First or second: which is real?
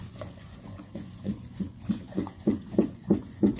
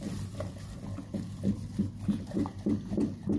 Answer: second